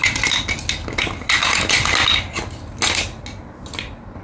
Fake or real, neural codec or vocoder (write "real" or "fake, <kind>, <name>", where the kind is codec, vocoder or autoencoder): real